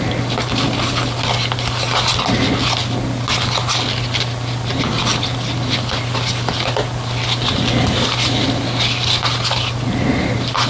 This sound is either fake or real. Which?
real